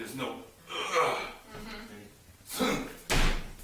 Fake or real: real